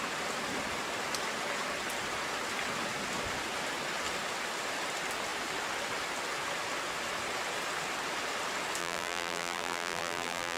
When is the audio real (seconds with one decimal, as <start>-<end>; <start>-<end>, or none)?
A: 0.0-8.8

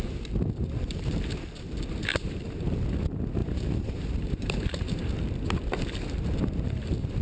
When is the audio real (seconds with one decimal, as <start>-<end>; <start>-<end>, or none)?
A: 0.0-2.1; 2.7-3.4; 5.1-7.2

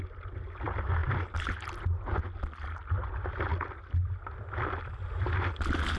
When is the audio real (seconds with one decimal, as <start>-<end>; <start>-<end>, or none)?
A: 0.0-6.0